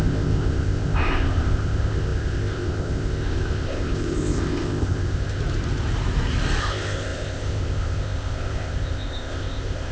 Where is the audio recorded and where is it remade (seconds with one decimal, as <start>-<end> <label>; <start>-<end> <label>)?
0.0-5.4 remade; 5.4-6.6 recorded; 6.6-9.9 remade